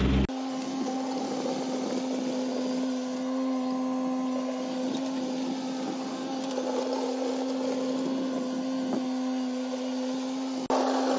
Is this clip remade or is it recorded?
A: recorded